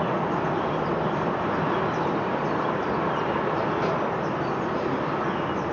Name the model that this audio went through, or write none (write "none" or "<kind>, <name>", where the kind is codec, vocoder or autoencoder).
none